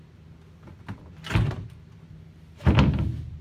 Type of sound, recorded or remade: recorded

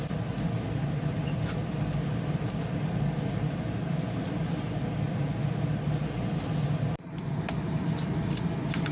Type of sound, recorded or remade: recorded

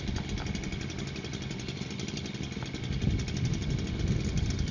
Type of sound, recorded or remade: recorded